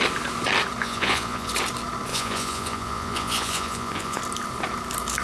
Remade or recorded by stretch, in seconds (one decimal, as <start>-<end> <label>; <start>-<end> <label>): 0.0-0.8 recorded; 0.8-1.5 remade; 1.5-2.1 recorded; 2.1-4.2 remade; 4.2-5.2 recorded

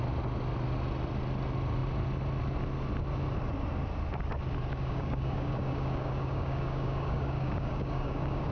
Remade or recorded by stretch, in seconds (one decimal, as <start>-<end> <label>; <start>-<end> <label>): 0.0-4.7 recorded; 4.7-8.5 remade